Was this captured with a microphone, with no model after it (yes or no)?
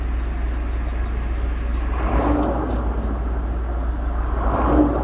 yes